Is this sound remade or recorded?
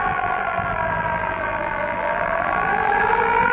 remade